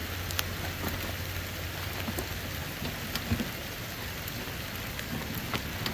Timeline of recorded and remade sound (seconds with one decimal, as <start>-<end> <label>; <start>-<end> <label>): 0.0-5.9 recorded